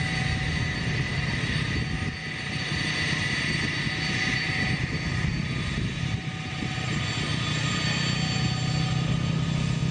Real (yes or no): yes